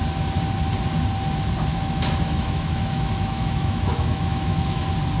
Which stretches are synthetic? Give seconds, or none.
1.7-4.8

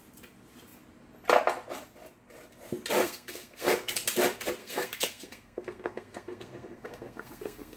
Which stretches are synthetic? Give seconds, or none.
3.0-3.9; 4.6-7.8